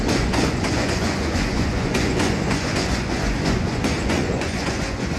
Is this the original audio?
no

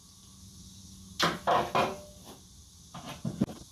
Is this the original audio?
yes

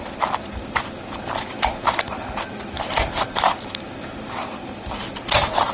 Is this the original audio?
yes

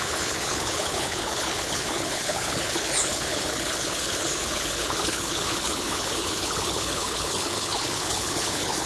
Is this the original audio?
no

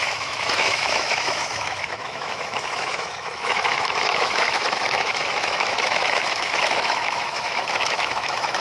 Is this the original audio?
no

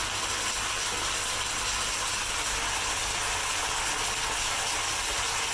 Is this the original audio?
yes